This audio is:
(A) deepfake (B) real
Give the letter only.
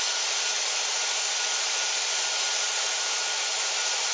B